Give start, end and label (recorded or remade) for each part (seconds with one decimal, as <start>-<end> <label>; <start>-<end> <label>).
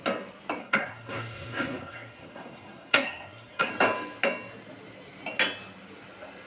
0.0-0.6 recorded; 0.6-3.7 remade; 3.7-6.5 recorded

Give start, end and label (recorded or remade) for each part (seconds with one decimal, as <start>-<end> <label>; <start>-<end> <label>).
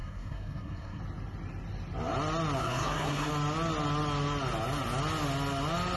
0.0-1.0 remade; 1.0-2.6 recorded; 2.6-3.3 remade; 3.3-6.0 recorded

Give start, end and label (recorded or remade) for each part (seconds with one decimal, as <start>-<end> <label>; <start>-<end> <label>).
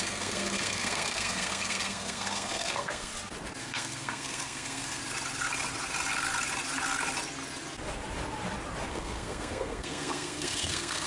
0.0-3.1 remade; 3.1-3.6 recorded; 3.6-5.0 remade; 5.0-8.9 recorded; 8.9-11.1 remade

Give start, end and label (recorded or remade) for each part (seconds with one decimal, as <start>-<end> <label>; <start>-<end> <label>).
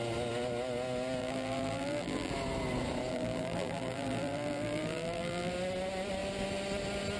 0.0-1.2 recorded; 1.2-2.3 remade; 2.3-3.1 recorded; 3.1-5.5 remade; 5.5-7.2 recorded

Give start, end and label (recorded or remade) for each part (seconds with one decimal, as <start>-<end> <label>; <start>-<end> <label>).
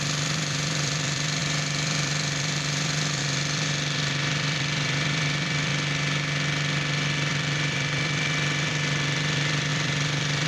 0.0-5.7 remade; 5.7-7.3 recorded; 7.3-10.5 remade